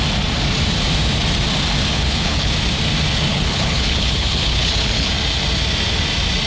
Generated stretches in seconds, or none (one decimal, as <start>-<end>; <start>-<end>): 1.9-2.5; 3.3-5.1